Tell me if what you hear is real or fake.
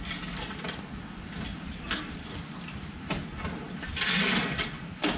real